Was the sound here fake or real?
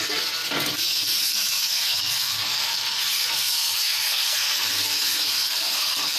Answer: fake